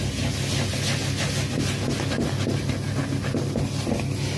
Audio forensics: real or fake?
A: real